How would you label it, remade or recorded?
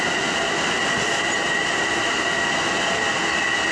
recorded